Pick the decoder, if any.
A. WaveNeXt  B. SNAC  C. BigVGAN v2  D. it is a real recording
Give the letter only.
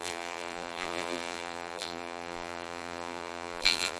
C